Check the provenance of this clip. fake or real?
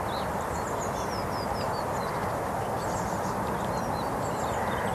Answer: real